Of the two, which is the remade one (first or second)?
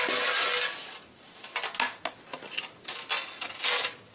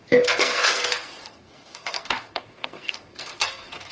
second